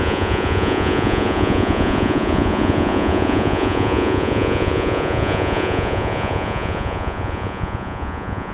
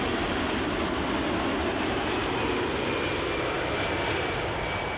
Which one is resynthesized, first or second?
first